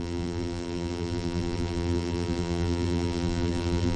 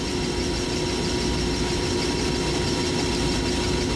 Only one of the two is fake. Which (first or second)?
first